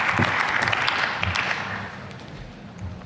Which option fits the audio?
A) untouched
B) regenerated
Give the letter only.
A